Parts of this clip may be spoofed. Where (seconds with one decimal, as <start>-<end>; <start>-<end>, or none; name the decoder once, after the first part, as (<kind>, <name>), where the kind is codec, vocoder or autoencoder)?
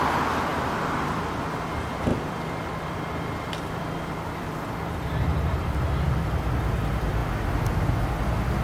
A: 0.5-1.2 (vocoder, BigVGAN v2); 2.1-6.4